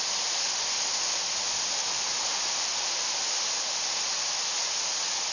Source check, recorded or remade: recorded